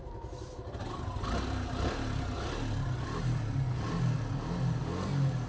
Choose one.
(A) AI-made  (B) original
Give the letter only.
B